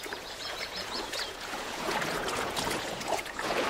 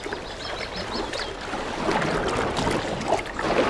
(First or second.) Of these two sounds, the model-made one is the first